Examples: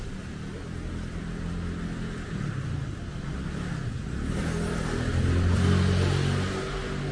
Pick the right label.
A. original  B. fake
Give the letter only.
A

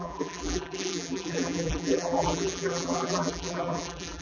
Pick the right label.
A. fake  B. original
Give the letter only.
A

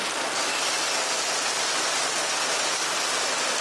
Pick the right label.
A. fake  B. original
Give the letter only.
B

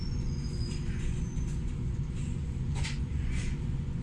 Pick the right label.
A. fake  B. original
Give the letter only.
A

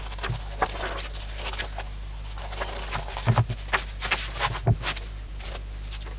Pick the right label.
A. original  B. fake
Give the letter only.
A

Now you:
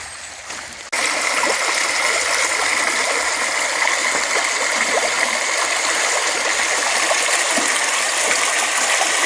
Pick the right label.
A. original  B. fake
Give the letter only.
A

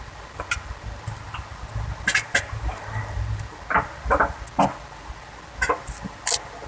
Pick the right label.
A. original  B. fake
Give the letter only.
A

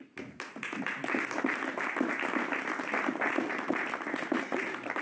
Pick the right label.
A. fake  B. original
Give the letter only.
B